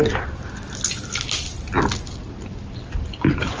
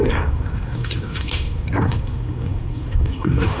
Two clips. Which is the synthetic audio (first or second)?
second